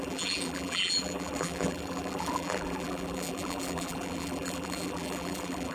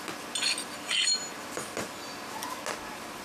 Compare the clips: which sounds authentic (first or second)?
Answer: second